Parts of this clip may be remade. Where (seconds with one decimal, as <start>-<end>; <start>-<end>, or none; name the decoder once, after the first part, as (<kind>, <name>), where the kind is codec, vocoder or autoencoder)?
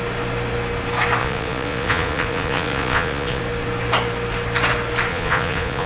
1.2-3.4 (vocoder, Vocos); 5.1-5.9